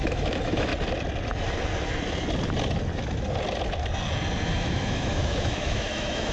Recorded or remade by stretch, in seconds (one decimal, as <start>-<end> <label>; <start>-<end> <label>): 0.0-0.7 remade; 0.7-4.5 recorded; 4.5-6.3 remade